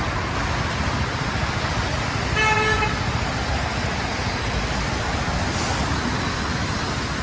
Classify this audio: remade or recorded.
recorded